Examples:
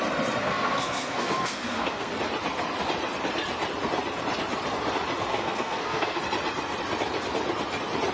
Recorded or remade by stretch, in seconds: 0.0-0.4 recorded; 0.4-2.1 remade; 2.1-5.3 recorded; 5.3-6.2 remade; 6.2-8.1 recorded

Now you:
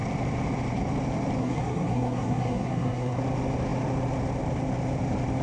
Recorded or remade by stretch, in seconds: 0.0-1.4 recorded; 1.4-3.2 remade; 3.2-5.4 recorded